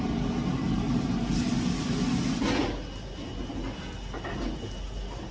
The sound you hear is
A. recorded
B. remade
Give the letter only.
A